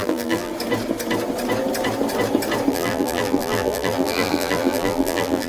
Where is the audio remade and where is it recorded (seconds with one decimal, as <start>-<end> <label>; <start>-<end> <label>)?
0.0-0.5 remade; 0.5-2.7 recorded; 2.7-5.5 remade